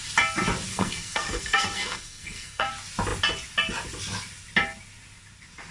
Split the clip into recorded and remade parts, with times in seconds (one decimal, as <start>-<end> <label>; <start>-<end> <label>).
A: 0.0-0.7 recorded; 0.7-2.7 remade; 2.7-5.7 recorded